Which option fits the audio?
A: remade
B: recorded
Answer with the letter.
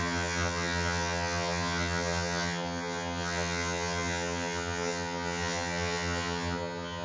A